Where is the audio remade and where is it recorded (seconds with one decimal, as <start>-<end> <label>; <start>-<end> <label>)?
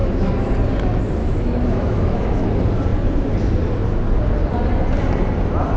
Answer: 0.0-0.5 remade; 0.5-1.2 recorded; 1.2-2.5 remade; 2.5-5.8 recorded